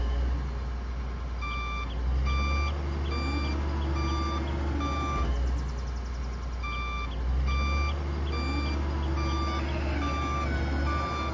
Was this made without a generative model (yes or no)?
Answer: yes